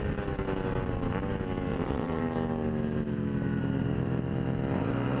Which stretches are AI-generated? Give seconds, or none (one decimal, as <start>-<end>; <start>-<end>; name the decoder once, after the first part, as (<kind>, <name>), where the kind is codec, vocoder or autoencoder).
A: 1.7-2.2 (vocoder, WaveNeXt)